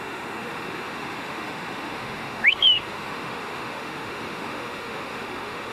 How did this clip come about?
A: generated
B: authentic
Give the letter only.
A